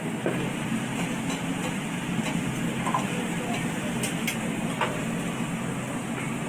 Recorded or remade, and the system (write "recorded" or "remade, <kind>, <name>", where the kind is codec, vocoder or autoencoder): recorded